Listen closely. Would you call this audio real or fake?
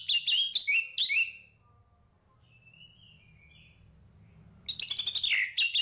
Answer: real